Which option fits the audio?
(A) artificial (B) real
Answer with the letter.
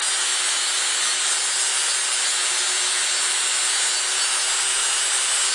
B